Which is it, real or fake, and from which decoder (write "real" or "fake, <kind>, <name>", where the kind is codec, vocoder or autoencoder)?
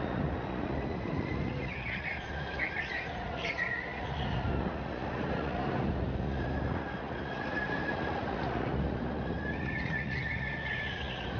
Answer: fake, vocoder, Vocos